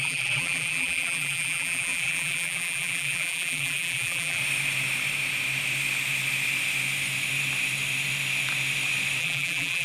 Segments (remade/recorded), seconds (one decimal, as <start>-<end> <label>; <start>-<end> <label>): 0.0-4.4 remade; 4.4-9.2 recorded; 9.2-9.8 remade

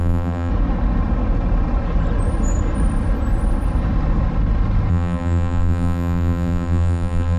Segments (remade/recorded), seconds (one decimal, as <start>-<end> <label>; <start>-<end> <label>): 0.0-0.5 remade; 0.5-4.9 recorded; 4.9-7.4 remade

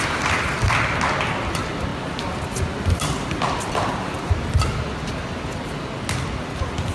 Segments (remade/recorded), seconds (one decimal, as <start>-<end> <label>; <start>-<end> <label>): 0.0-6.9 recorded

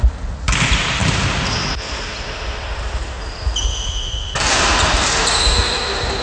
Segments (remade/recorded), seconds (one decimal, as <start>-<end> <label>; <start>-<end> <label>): 0.0-6.2 recorded

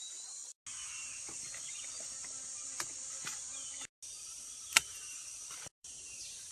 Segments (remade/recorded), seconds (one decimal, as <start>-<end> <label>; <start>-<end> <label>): 0.0-0.4 remade; 0.4-4.3 recorded; 4.3-5.2 remade; 5.2-5.7 recorded; 5.7-6.5 remade